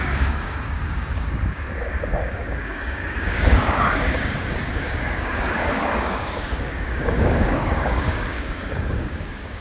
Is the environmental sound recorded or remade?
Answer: remade